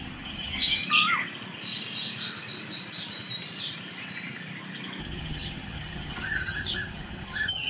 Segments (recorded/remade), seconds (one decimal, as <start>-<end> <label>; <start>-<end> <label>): 0.0-0.8 remade; 0.8-5.0 recorded; 5.0-7.7 remade